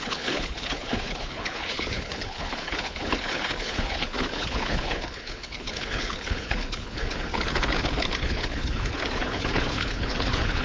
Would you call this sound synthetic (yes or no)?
yes